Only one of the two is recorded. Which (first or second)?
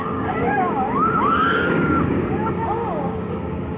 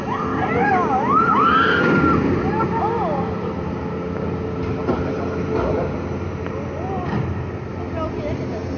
second